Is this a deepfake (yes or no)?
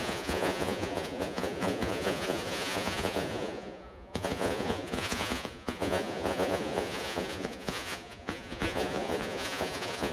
yes